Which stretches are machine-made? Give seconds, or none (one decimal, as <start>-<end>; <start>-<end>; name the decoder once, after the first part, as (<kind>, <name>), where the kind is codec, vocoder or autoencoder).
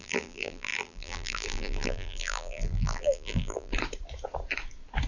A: 0.0-3.7 (vocoder, BigVGAN v2)